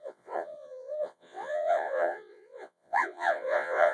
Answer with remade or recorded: remade